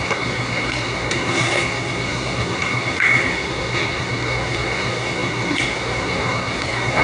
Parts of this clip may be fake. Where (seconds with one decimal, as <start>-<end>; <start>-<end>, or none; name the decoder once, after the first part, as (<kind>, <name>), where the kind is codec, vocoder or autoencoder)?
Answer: 0.0-7.0 (codec, SNAC)

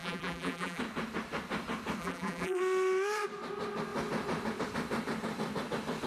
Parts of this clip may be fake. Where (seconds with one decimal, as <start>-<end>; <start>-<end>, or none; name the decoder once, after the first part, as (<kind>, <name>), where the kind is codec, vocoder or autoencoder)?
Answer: 0.0-0.8 (vocoder, BigVGAN v2); 2.0-2.6

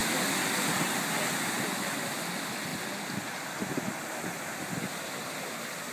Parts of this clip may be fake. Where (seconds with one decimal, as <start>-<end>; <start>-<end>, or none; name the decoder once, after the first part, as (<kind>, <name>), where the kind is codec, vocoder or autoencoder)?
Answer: none

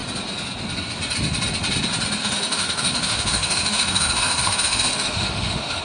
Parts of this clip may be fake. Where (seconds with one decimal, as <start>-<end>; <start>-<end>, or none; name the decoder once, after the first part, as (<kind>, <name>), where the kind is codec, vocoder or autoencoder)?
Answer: 2.2-5.8 (autoencoder, DAC-VAE)